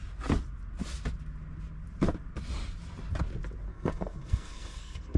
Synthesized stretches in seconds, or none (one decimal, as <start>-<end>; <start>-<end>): 3.7-5.2